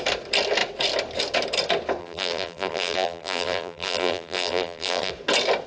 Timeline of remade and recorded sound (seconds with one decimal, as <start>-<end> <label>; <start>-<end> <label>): 0.0-2.0 recorded; 2.0-5.1 remade; 5.1-5.7 recorded